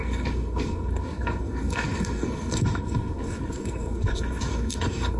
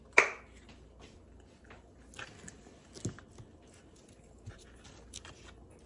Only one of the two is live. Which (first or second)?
second